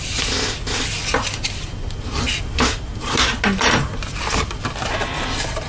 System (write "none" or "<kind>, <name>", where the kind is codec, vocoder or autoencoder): none